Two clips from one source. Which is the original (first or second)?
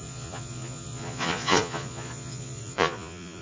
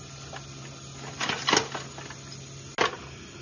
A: second